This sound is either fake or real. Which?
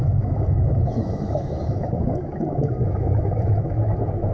fake